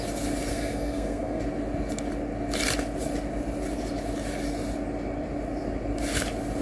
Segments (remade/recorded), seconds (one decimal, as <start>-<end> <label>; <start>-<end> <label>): 0.0-0.5 recorded; 0.5-1.4 remade; 1.4-6.6 recorded